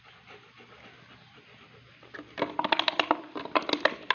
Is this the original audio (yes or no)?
yes